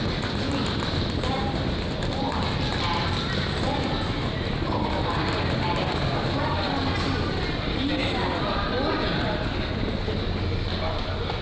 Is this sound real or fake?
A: real